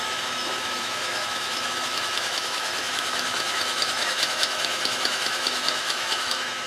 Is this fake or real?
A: fake